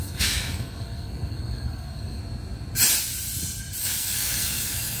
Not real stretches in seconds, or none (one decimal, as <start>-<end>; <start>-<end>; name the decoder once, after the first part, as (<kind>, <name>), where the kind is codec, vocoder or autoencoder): 0.0-2.2 (codec, SNAC); 3.8-5.0